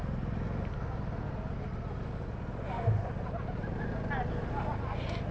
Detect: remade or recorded recorded